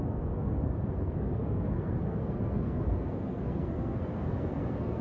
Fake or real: fake